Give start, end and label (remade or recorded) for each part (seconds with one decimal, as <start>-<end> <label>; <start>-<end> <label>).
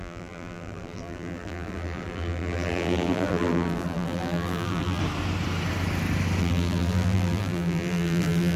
0.0-5.0 remade; 5.0-6.4 recorded; 6.4-8.6 remade